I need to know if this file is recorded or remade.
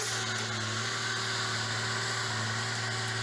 recorded